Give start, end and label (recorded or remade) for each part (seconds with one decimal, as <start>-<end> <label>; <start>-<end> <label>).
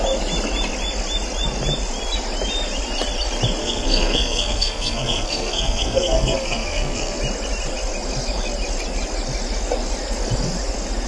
0.0-3.6 recorded; 3.6-7.2 remade; 7.2-11.1 recorded